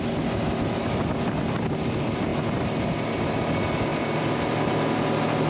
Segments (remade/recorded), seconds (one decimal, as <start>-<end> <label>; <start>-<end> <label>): 0.0-3.9 recorded; 3.9-4.7 remade; 4.7-5.5 recorded